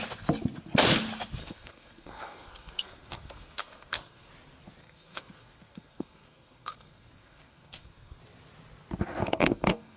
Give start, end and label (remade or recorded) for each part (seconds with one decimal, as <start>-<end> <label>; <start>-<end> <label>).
0.0-1.4 recorded; 1.4-4.3 remade; 4.3-4.8 recorded; 4.8-8.2 remade; 8.2-9.2 recorded; 9.2-10.0 remade